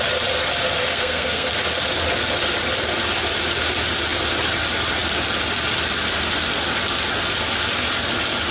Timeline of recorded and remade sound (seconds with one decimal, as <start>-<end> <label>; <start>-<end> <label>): 0.0-0.9 recorded; 0.9-1.5 remade; 1.5-8.5 recorded